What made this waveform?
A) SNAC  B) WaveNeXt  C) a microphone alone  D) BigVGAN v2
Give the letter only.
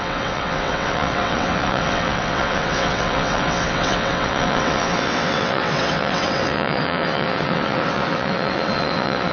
B